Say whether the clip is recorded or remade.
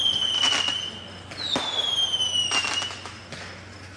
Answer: recorded